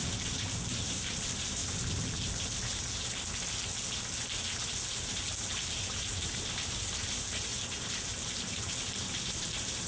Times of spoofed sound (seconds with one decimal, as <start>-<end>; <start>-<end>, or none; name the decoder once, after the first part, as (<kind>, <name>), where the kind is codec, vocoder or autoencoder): 0.0-1.6 (vocoder, BigVGAN v2); 4.9-9.9